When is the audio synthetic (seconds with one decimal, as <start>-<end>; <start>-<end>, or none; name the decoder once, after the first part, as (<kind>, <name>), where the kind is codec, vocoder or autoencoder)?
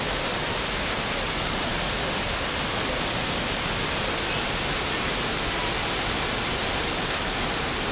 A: none